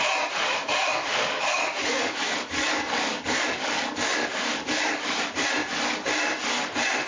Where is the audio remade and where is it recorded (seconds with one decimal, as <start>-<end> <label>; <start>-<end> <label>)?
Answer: 0.0-0.9 recorded; 0.9-5.2 remade; 5.2-7.1 recorded

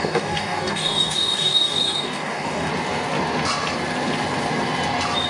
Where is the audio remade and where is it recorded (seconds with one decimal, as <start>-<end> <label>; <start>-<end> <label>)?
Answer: 0.0-2.7 remade; 2.7-5.3 recorded

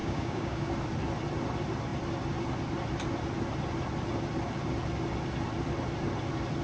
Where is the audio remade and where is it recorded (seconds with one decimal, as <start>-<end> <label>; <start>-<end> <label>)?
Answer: 0.0-0.7 remade; 0.7-6.6 recorded